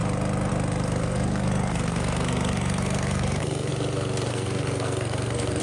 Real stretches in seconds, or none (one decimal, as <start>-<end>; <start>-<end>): 0.0-1.0; 3.7-4.3